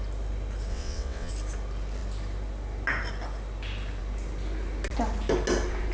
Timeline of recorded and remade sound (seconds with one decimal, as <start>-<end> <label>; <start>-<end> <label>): 0.0-0.7 recorded; 0.7-1.3 remade; 1.3-5.9 recorded